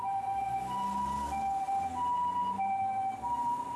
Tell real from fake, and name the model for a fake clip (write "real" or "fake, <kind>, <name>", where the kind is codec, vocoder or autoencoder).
real